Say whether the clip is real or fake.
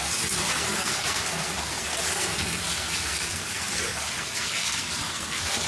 fake